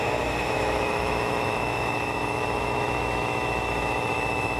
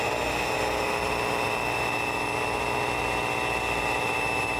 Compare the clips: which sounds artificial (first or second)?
first